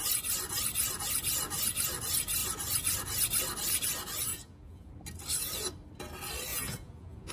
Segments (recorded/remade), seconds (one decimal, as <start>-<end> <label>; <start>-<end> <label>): 0.0-4.3 recorded; 4.3-4.9 remade; 4.9-6.5 recorded; 6.5-7.3 remade